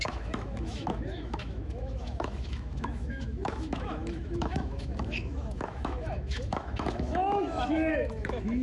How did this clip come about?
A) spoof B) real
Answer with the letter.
A